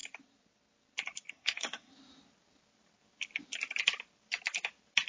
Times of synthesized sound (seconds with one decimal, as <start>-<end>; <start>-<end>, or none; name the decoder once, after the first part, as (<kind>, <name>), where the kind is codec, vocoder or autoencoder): 1.3-1.9 (codec, SNAC)